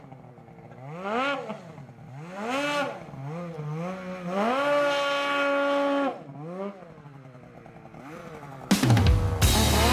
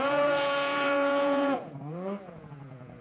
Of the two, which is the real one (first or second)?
first